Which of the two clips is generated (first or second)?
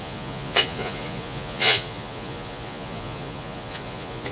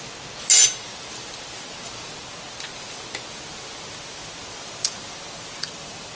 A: first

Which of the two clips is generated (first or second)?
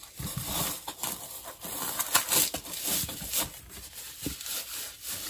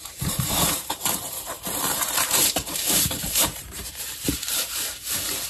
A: second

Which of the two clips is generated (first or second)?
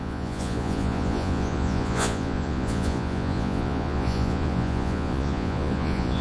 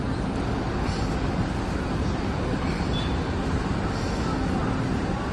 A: first